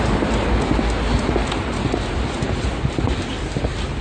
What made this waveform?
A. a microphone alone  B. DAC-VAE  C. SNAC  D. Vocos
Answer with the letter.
A